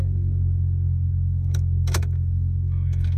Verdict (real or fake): fake